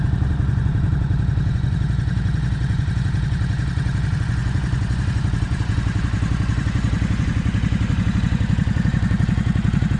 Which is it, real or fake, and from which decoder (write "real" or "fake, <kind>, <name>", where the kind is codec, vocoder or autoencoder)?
fake, vocoder, Vocos